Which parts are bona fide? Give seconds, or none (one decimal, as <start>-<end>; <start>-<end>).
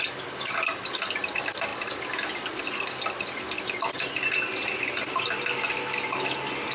0.0-6.7